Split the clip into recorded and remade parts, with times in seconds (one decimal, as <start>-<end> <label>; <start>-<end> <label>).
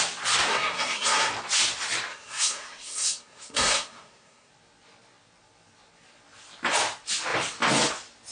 0.0-0.5 recorded; 0.5-1.3 remade; 1.3-2.1 recorded; 2.1-4.5 remade; 4.5-8.3 recorded